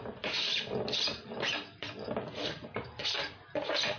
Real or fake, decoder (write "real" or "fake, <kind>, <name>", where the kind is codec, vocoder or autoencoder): real